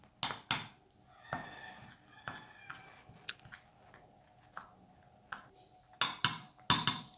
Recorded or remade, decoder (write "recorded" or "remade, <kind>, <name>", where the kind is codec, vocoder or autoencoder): recorded